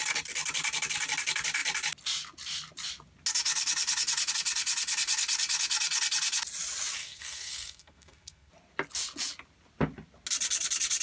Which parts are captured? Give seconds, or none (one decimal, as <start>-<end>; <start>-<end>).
0.0-7.0; 8.5-11.0